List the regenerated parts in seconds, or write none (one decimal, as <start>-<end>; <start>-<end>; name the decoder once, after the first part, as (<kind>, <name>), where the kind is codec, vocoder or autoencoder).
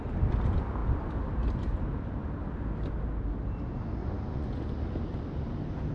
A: 4.0-4.6 (vocoder, Vocos)